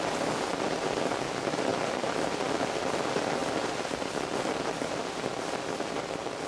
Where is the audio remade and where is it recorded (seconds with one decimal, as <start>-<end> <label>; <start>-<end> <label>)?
0.0-6.5 remade